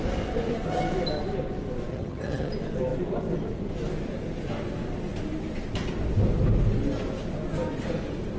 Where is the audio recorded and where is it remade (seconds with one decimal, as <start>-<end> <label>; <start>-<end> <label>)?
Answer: 0.0-1.9 recorded; 1.9-2.5 remade; 2.5-8.4 recorded